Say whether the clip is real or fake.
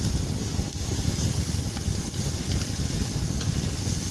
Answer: real